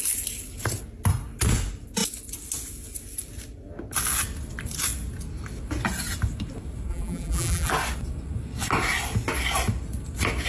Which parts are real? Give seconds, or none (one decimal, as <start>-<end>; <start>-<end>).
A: 0.0-6.9; 7.7-10.5